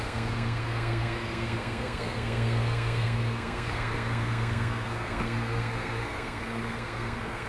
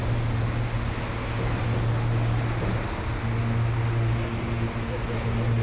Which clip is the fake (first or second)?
first